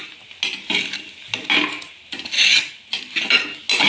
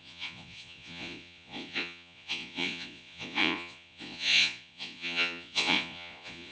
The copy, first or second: second